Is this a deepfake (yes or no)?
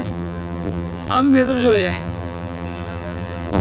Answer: yes